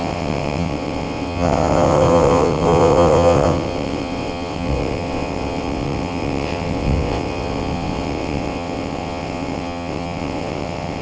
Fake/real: fake